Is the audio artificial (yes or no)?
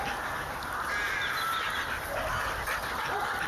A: no